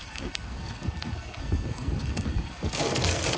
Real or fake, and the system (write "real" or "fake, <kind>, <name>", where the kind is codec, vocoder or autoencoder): fake, codec, SNAC